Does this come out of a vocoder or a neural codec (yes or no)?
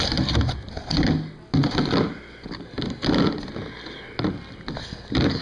no